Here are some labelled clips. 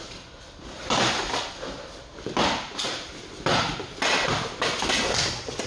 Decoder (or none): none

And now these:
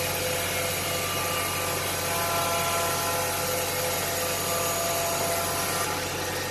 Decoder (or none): none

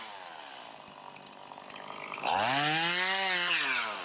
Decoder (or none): none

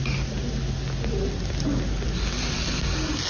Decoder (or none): none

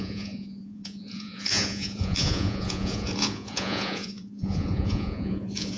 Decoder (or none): vocoder, Vocos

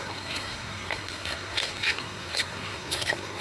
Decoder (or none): codec, SNAC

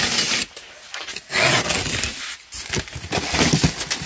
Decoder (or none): none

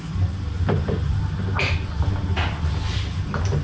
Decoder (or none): none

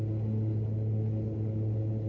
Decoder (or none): none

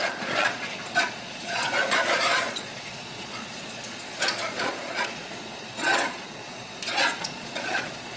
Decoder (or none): vocoder, Vocos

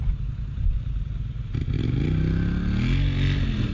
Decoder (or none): none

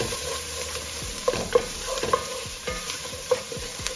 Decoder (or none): vocoder, BigVGAN v2